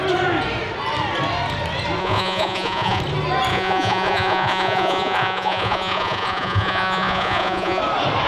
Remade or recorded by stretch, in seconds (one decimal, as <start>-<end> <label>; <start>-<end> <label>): 0.0-2.0 recorded; 2.0-3.0 remade; 3.0-3.5 recorded; 3.5-7.8 remade; 7.8-8.3 recorded